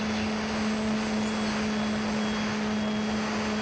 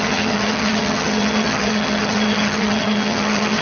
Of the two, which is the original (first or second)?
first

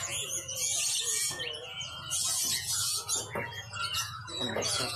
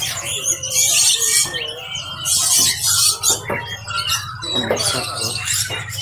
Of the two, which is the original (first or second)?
second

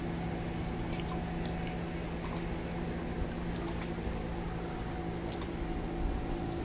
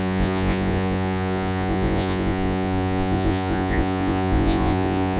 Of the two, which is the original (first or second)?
first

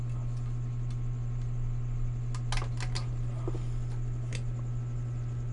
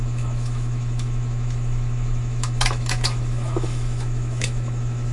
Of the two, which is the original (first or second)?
first